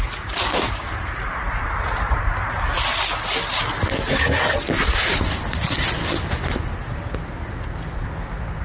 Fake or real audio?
real